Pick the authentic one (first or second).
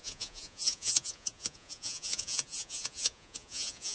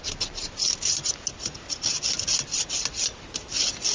second